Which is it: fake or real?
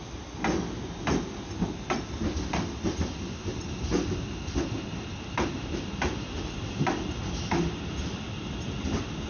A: real